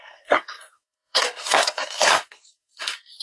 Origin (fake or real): fake